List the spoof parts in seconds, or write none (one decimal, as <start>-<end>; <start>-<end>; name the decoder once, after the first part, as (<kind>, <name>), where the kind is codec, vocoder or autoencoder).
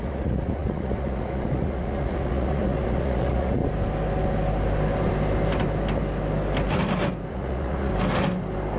0.0-3.6 (vocoder, Vocos); 7.3-7.9